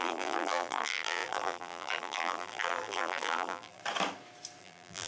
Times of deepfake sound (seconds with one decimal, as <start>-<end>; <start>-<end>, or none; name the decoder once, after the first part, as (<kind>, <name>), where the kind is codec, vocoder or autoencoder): 0.0-3.8 (vocoder, BigVGAN v2); 4.6-5.1